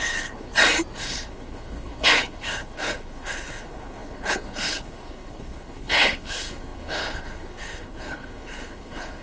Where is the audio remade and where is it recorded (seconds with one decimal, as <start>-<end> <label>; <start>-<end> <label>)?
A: 0.0-0.5 remade; 0.5-1.0 recorded; 1.0-9.2 remade